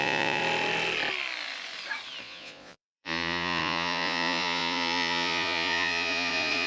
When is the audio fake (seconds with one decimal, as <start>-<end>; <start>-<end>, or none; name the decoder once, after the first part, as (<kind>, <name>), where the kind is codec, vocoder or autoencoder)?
0.0-0.4 (vocoder, Vocos); 2.2-6.7